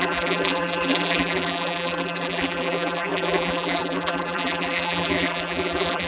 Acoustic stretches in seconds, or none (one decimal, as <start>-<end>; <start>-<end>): none